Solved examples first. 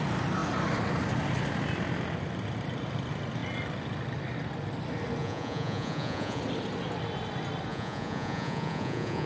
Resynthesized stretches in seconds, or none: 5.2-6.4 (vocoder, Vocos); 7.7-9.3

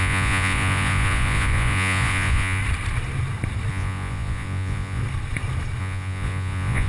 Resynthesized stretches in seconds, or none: 0.0-2.6 (vocoder, Vocos); 3.7-5.0; 5.8-6.9

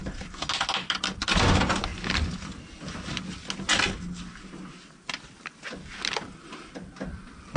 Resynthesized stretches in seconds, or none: none